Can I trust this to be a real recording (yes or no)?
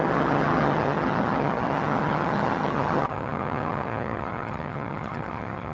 no